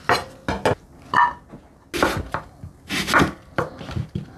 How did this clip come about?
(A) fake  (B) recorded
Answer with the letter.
B